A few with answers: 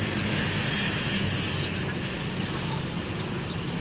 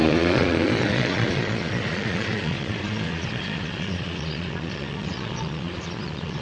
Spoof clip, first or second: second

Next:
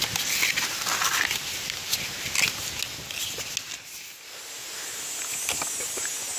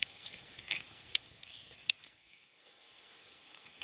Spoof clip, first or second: second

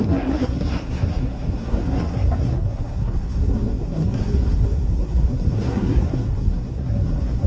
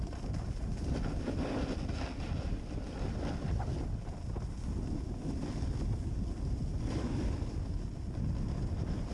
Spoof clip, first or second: first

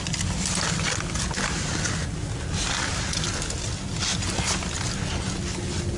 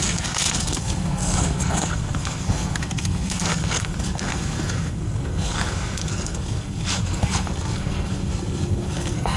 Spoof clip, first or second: second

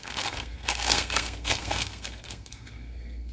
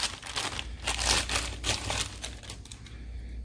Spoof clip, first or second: first